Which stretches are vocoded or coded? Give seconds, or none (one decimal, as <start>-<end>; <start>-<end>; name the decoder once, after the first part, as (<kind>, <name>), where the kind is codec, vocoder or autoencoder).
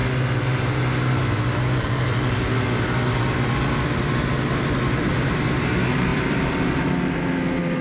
6.1-6.9 (vocoder, BigVGAN v2)